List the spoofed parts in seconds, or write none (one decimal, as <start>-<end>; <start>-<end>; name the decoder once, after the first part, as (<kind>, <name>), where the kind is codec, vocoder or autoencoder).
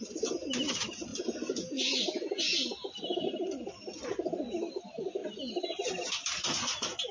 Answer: none